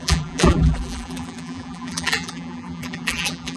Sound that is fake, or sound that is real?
fake